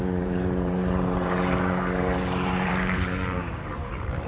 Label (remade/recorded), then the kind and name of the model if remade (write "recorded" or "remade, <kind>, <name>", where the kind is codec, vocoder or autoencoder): remade, vocoder, BigVGAN v2